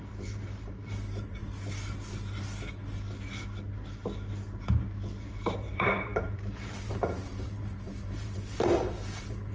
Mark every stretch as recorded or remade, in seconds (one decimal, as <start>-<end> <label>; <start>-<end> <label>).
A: 0.0-1.4 remade; 1.4-5.2 recorded; 5.2-9.5 remade